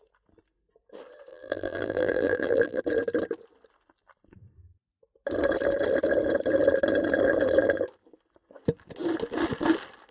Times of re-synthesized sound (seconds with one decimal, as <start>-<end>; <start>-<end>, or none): 1.3-2.8